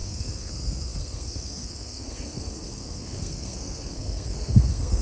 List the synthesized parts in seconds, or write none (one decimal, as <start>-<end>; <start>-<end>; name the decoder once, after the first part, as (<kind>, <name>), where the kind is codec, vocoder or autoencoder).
0.0-5.0 (codec, SNAC)